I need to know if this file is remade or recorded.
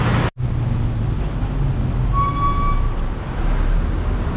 recorded